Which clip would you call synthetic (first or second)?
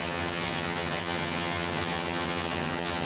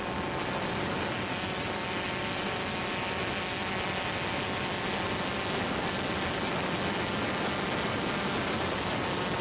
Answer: first